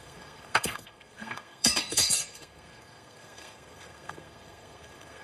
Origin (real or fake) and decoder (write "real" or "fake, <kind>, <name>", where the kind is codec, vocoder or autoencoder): fake, codec, SNAC